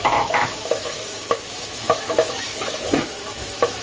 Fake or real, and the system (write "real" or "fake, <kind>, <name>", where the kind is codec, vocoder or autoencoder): fake, autoencoder, DAC-VAE